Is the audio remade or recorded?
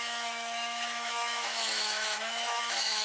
remade